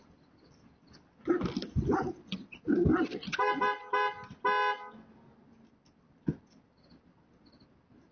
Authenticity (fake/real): real